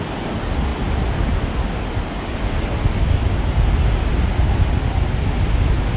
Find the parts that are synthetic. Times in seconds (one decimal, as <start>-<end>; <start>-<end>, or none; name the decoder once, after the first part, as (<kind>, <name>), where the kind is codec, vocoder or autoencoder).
0.7-1.3 (vocoder, BigVGAN v2); 4.1-4.6

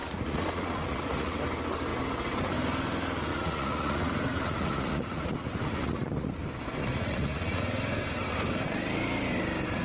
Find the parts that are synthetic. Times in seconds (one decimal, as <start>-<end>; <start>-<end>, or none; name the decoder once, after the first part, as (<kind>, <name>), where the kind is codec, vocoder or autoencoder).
0.0-1.4 (vocoder, Vocos); 3.3-6.3; 6.8-7.6

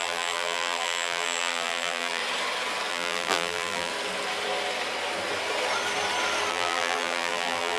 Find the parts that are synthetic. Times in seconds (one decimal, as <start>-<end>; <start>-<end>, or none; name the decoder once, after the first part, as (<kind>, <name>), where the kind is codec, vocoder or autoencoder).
0.0-2.2 (vocoder, BigVGAN v2); 2.9-3.9; 6.5-7.8

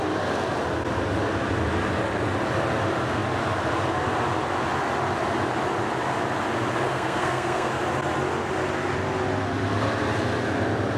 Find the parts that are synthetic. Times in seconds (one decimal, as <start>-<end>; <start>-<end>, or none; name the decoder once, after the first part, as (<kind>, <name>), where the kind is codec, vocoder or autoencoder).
6.9-7.7 (codec, SNAC)

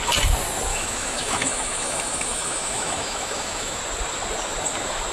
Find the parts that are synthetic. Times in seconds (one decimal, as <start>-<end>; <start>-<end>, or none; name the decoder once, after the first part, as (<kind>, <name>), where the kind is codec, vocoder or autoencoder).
0.7-3.8 (autoencoder, DAC-VAE)

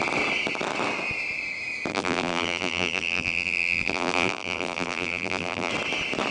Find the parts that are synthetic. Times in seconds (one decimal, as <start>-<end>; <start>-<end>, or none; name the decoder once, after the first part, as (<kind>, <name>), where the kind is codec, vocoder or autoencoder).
1.9-5.7 (vocoder, BigVGAN v2)

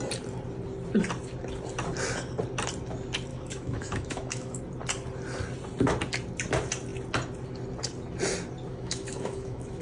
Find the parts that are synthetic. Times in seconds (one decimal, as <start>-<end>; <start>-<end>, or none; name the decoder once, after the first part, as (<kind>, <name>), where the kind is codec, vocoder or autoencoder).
3.3-4.6 (autoencoder, DAC-VAE); 8.7-9.8